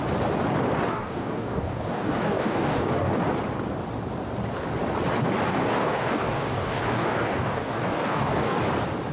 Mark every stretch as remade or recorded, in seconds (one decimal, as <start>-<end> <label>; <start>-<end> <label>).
0.0-0.9 recorded; 0.9-3.2 remade; 3.2-5.5 recorded; 5.5-8.6 remade; 8.6-9.1 recorded